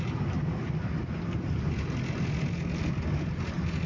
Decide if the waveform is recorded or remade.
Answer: recorded